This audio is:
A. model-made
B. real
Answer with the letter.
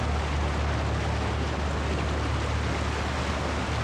B